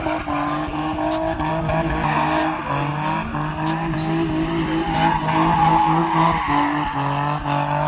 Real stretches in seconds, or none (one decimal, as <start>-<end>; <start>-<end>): 0.0-7.9